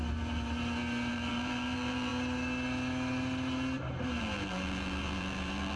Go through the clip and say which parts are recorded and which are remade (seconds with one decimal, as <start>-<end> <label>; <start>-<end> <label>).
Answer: 0.0-1.1 recorded; 1.1-2.1 remade; 2.1-4.2 recorded; 4.2-5.8 remade